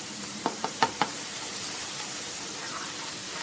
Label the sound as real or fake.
fake